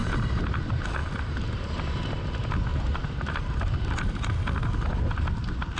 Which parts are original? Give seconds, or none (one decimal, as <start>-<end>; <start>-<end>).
0.6-1.0; 2.1-2.7; 3.7-5.8

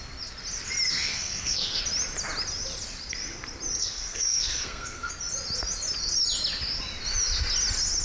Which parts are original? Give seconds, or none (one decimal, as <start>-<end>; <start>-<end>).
0.0-0.9; 1.8-3.8; 5.1-8.0

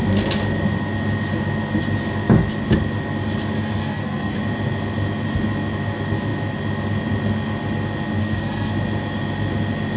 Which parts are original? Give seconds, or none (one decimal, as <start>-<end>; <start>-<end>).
0.0-3.8; 4.4-8.2; 8.7-10.0

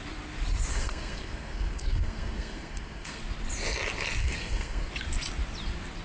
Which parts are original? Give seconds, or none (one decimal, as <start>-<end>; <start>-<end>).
0.0-0.7; 3.2-4.2; 4.9-6.0

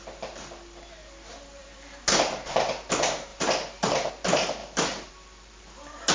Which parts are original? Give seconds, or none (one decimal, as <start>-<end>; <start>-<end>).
0.0-3.3; 4.1-4.6; 5.1-6.1

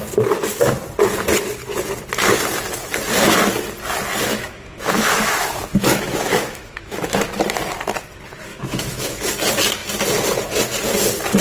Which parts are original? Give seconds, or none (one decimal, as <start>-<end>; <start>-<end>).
0.0-4.3; 7.4-8.5; 9.3-11.4

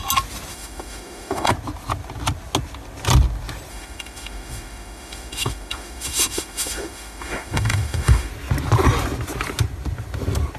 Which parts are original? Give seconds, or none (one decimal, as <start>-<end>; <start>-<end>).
0.0-0.5; 1.5-3.7; 8.3-10.6

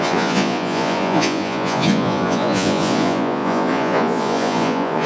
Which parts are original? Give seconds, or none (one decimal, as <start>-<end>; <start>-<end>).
none